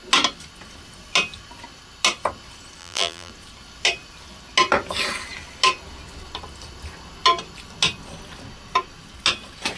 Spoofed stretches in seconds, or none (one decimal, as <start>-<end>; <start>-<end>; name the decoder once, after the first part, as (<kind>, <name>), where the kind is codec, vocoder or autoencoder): 2.8-3.3 (vocoder, BigVGAN v2)